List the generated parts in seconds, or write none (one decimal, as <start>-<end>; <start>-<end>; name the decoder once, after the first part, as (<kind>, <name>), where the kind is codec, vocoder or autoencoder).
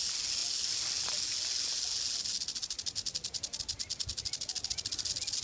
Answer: none